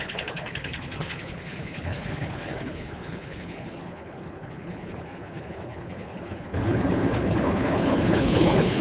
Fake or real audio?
fake